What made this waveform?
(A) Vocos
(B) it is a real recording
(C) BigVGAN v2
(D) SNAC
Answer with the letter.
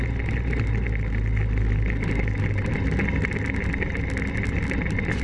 B